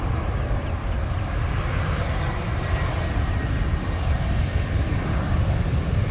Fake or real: real